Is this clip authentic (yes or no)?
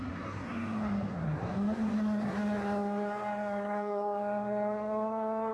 no